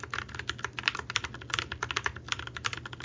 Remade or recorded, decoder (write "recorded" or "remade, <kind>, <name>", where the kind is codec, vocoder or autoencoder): recorded